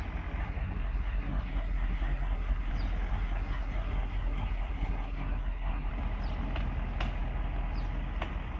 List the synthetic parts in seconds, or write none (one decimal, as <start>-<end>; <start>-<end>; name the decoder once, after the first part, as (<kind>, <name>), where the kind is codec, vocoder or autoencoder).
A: 0.4-2.7 (codec, SNAC); 3.1-5.9